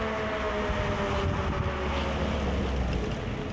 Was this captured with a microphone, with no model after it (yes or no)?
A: yes